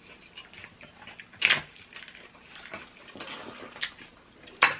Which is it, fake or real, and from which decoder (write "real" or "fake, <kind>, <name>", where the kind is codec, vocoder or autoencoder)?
real